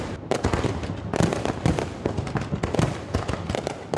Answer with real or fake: real